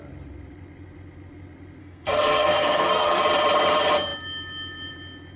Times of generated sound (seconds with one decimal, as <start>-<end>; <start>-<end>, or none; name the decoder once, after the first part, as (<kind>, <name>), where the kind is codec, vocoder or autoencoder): 1.8-3.2 (codec, SNAC)